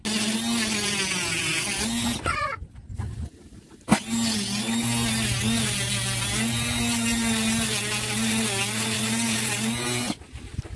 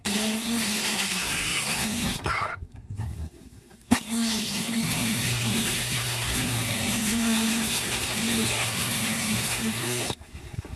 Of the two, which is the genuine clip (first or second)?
first